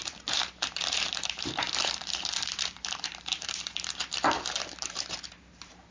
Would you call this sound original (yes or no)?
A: no